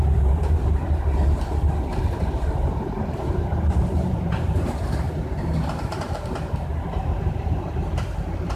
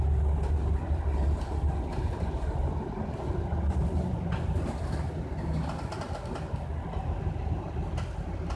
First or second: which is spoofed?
first